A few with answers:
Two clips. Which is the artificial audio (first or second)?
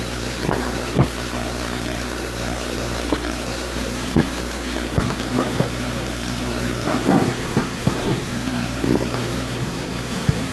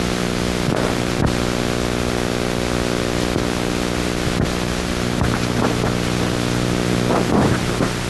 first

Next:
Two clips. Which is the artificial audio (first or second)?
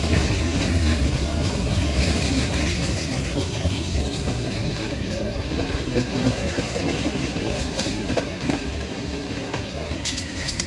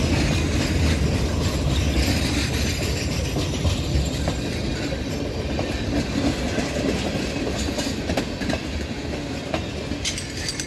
first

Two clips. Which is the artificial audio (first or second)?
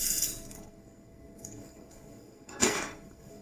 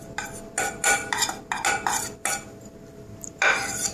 first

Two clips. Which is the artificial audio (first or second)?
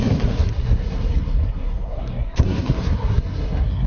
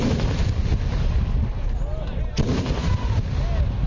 first